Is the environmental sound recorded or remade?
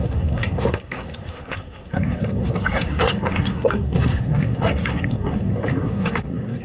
remade